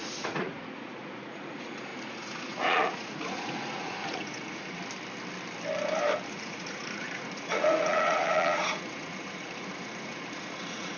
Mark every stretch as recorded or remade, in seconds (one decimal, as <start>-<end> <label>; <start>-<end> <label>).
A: 0.0-4.8 remade; 4.8-6.3 recorded; 6.3-11.0 remade